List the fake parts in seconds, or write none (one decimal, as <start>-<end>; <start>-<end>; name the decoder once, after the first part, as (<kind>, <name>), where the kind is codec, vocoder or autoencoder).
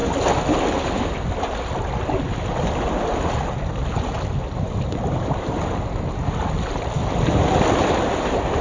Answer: none